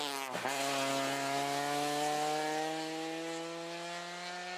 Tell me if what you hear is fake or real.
real